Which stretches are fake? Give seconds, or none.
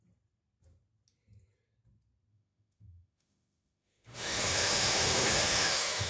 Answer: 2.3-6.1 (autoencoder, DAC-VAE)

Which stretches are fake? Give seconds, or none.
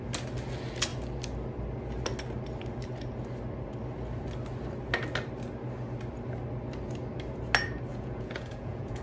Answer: 7.9-9.0 (vocoder, Vocos)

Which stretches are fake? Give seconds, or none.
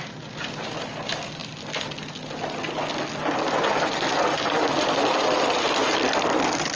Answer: none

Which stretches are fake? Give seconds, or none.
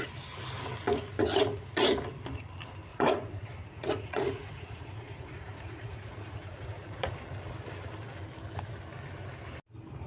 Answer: 2.9-7.1 (vocoder, Vocos)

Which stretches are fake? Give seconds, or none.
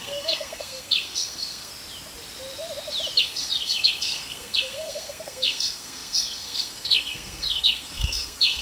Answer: 0.0-1.7 (codec, SNAC); 3.2-8.6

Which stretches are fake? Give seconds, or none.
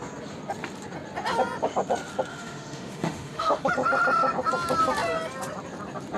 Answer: 2.3-3.7 (autoencoder, DAC-VAE)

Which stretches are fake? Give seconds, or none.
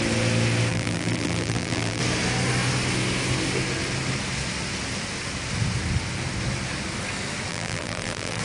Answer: 0.7-2.0 (vocoder, BigVGAN v2); 7.5-8.4